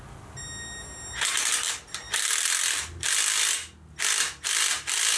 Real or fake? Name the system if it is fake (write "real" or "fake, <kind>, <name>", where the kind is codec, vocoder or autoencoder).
real